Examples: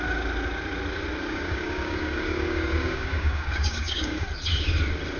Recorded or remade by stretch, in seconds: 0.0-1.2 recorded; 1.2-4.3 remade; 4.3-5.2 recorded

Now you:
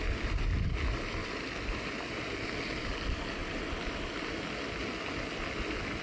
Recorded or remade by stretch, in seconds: 0.0-1.2 recorded; 1.2-2.6 remade; 2.6-6.0 recorded

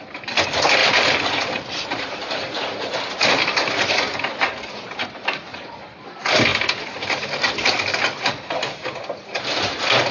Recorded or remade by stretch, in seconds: 0.0-10.1 recorded

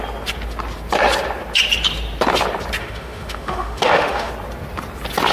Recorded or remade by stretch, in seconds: 0.0-2.8 recorded; 2.8-4.3 remade; 4.3-5.3 recorded

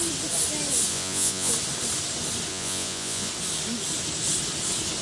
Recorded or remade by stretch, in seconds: 0.0-0.9 recorded; 0.9-1.5 remade; 1.5-2.5 recorded; 2.5-3.3 remade; 3.3-5.0 recorded

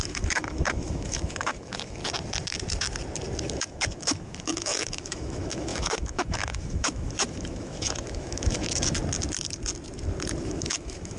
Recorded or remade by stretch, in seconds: 0.0-2.0 remade; 2.0-3.4 recorded; 3.4-9.0 remade; 9.0-10.4 recorded; 10.4-11.2 remade

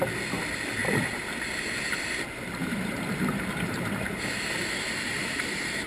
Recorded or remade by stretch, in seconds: 0.0-2.6 recorded; 2.6-5.9 remade